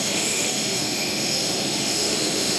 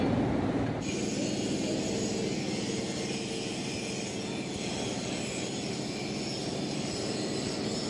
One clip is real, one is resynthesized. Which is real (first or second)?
second